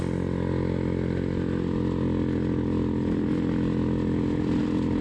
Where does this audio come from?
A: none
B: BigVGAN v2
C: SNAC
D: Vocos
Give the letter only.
A